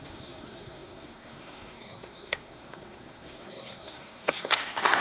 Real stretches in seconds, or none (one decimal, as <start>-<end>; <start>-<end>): none

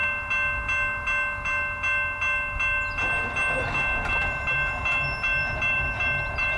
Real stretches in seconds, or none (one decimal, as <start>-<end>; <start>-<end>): 0.0-4.0